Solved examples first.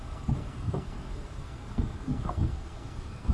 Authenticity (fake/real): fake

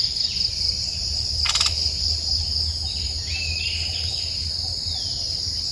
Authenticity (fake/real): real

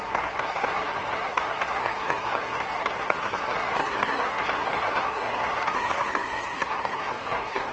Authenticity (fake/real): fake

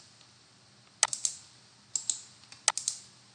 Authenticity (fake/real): real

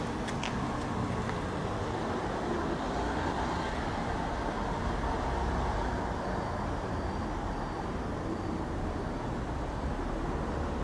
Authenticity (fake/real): real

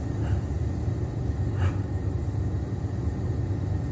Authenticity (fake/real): real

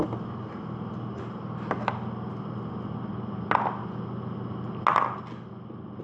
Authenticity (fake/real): real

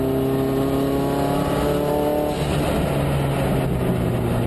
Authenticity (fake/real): real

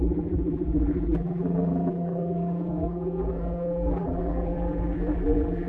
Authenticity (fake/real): fake